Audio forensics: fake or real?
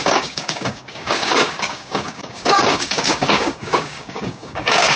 fake